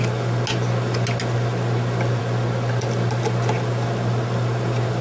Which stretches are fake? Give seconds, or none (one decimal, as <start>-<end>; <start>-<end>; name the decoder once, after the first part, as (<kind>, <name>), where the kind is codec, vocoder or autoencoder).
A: none